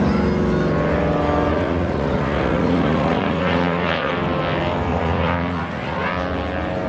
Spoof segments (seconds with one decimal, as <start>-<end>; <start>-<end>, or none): 1.5-4.1; 4.9-6.1